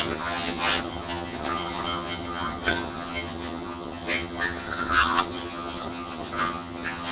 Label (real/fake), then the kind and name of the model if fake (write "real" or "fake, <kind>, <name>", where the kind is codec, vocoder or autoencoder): fake, vocoder, HiFi-GAN